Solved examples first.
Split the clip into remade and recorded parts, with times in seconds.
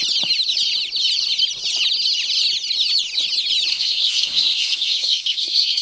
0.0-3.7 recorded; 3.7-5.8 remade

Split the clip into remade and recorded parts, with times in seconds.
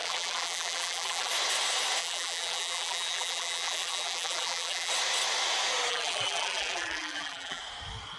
0.0-1.3 remade; 1.3-2.0 recorded; 2.0-4.9 remade; 4.9-5.9 recorded; 5.9-7.6 remade; 7.6-8.2 recorded